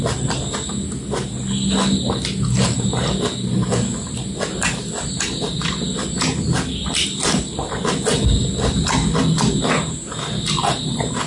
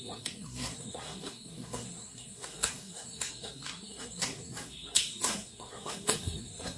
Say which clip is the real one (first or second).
first